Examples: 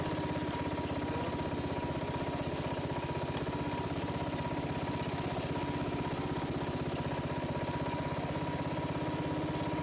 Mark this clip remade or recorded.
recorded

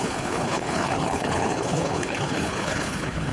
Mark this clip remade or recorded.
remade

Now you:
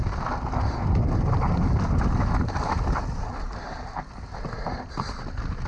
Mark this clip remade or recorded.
recorded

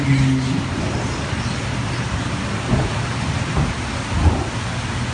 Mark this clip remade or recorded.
recorded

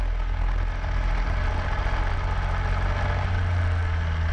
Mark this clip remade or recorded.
recorded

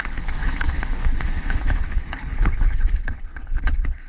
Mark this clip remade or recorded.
remade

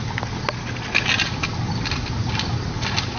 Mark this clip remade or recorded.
recorded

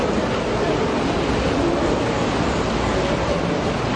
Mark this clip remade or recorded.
recorded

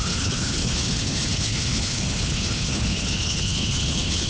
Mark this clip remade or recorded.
remade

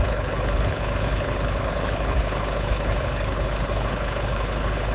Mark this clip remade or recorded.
remade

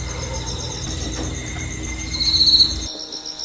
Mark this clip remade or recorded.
recorded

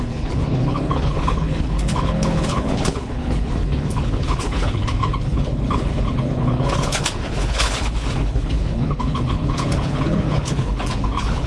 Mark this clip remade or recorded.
remade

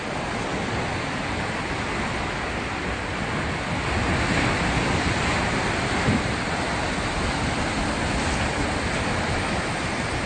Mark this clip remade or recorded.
recorded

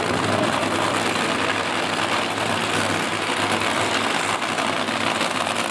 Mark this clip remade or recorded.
recorded